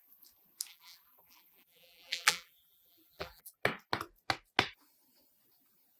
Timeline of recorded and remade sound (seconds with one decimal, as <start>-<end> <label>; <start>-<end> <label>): 0.0-0.7 recorded; 0.7-3.6 remade; 3.6-6.0 recorded